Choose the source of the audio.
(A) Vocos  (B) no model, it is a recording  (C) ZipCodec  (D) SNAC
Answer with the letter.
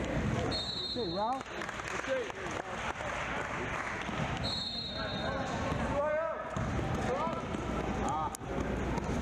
B